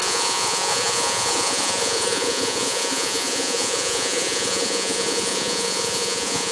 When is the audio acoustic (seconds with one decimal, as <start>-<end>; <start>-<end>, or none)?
none